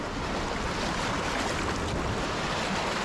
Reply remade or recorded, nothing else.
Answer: recorded